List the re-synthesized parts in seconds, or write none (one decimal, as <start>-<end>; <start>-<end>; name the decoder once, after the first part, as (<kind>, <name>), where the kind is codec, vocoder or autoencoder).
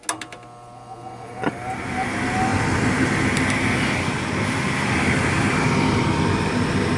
none